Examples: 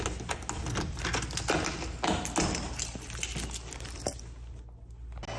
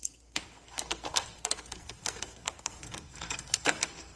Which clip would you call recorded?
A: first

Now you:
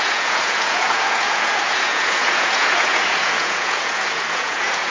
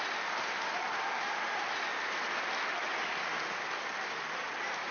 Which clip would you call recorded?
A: second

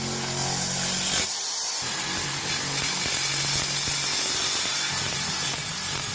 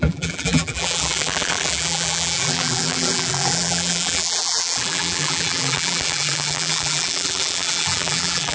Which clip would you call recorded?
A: first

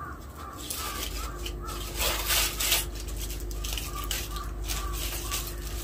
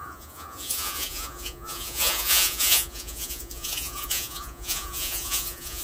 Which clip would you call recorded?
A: first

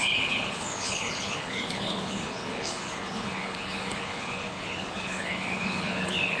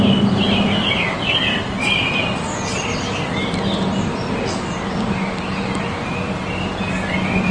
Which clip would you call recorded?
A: second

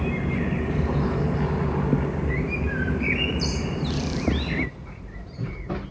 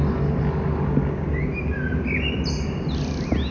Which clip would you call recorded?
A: second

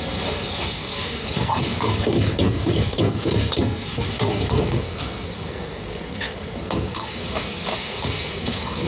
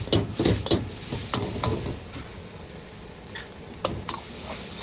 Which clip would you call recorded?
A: second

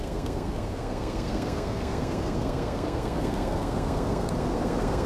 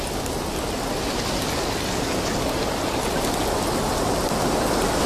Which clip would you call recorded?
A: second